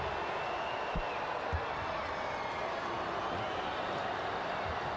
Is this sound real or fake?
real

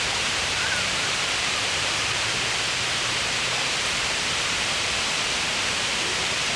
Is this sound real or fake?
fake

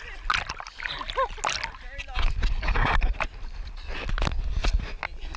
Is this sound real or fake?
real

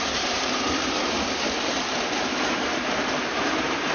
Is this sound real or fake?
fake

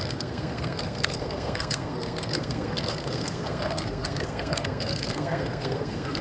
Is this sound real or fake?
fake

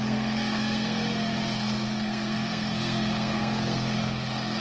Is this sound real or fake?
fake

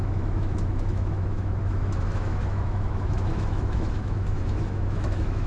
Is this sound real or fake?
fake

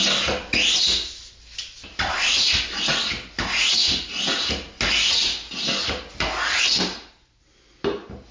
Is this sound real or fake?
real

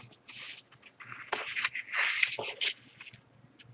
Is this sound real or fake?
real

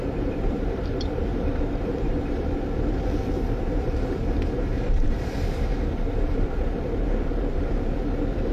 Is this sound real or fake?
fake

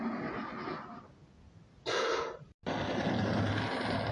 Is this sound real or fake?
real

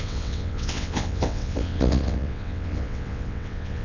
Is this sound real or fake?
fake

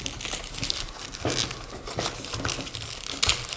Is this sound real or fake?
real